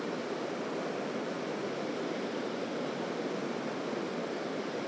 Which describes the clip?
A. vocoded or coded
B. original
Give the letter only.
B